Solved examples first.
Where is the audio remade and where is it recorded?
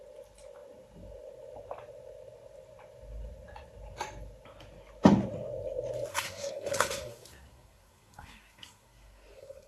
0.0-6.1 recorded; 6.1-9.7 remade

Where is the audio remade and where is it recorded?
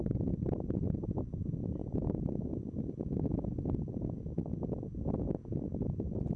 0.0-6.4 recorded